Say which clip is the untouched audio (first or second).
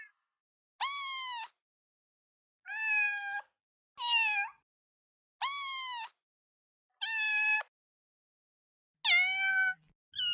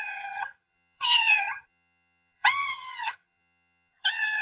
first